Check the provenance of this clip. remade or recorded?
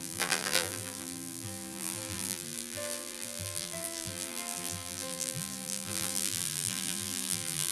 remade